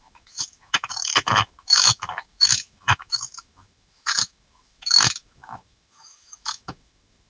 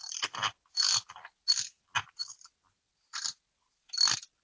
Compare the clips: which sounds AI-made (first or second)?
first